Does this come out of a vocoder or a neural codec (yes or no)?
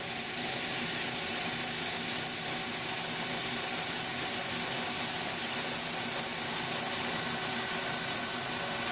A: no